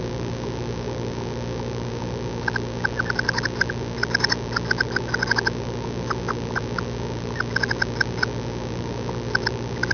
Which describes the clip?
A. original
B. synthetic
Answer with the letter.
A